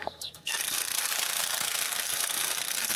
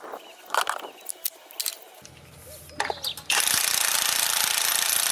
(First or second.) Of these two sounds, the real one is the second